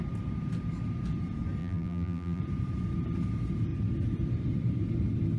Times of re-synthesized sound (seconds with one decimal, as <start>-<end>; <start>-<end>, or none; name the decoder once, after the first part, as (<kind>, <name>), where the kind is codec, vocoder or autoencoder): 1.6-2.4 (vocoder, BigVGAN v2)